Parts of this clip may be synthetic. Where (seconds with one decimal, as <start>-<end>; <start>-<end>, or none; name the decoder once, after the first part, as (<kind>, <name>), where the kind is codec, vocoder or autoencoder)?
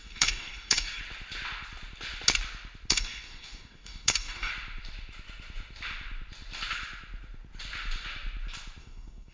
0.0-1.0 (codec, DAC); 2.9-4.5; 8.8-9.3